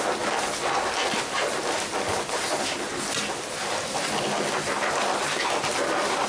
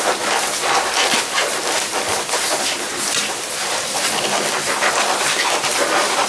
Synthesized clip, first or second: second